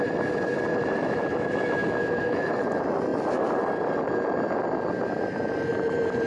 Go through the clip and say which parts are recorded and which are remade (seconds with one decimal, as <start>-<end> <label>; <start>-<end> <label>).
0.0-0.7 recorded; 0.7-2.5 remade; 2.5-6.3 recorded